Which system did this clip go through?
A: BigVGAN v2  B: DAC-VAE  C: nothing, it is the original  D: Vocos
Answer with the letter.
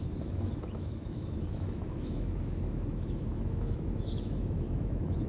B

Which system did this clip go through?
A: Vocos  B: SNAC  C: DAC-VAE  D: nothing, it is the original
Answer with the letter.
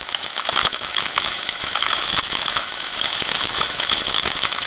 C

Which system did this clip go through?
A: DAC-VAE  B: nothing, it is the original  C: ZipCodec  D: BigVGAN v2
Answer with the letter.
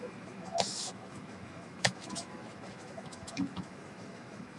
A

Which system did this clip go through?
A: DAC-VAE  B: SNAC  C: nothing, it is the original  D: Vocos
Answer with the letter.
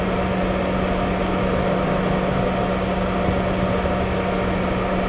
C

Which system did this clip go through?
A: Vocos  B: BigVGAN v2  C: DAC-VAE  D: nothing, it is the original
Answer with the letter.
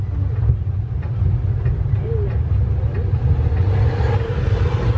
D